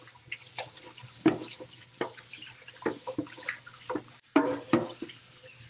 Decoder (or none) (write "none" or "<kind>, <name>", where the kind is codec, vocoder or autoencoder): none